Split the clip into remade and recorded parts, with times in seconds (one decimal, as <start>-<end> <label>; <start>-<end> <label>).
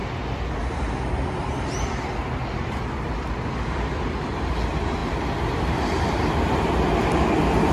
0.0-5.0 recorded; 5.0-5.7 remade; 5.7-7.7 recorded